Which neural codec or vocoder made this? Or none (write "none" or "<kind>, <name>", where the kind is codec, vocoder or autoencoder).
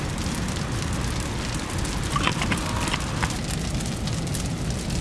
none